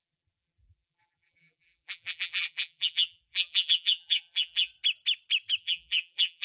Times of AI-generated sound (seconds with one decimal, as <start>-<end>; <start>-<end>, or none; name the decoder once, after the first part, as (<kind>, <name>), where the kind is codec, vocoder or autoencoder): 0.0-4.7 (vocoder, BigVGAN v2); 5.6-6.4